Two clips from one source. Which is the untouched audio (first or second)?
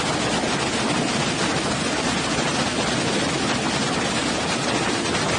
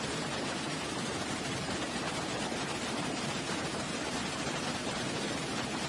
first